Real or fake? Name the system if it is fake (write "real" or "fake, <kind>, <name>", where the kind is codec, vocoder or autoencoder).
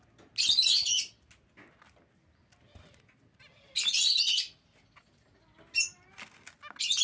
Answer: real